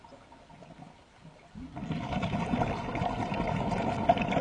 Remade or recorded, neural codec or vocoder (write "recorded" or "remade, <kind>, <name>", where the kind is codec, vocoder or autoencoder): recorded